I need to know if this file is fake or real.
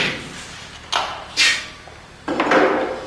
real